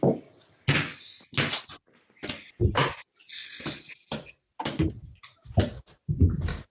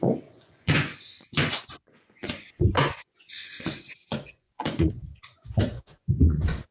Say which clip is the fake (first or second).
second